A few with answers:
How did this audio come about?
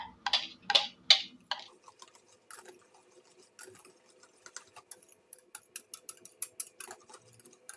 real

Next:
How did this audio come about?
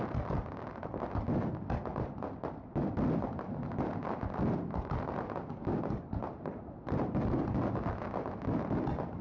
real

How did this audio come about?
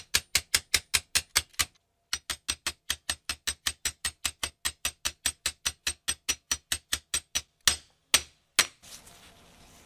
real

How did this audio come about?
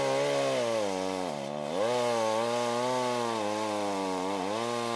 real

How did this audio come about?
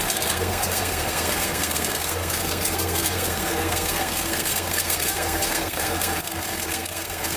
fake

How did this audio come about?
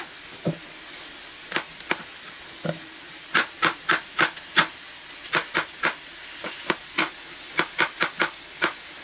real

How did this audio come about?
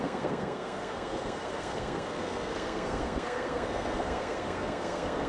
fake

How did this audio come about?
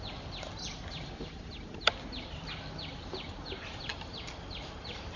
real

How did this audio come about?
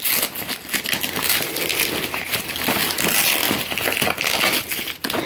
real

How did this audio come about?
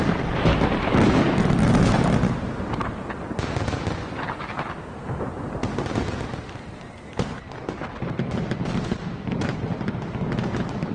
real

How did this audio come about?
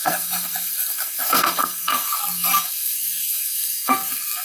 fake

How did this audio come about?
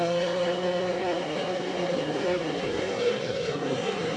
fake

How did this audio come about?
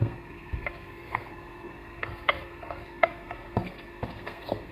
fake